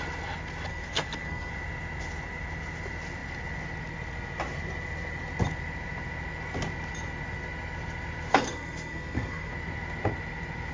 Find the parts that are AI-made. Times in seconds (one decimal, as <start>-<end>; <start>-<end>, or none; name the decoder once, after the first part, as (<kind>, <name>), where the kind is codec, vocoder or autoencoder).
0.7-1.5 (codec, SNAC); 8.3-9.5